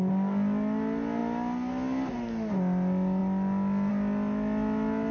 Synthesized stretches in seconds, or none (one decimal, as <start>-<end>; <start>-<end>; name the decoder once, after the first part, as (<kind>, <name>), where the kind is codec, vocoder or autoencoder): none